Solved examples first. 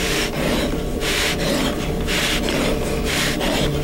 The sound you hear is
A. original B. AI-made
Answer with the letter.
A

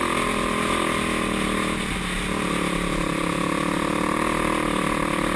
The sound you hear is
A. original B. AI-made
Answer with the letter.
A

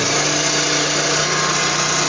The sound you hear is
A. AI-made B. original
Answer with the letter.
B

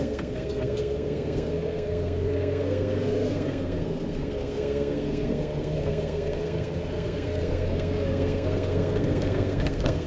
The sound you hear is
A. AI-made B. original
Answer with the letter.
A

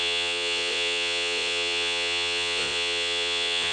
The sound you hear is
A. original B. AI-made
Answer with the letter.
B